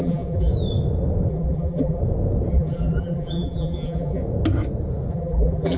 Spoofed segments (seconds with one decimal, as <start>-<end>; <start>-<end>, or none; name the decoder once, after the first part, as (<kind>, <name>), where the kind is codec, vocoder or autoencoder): 0.0-0.5 (vocoder, BigVGAN v2); 1.3-2.0; 2.5-4.2; 5.1-5.8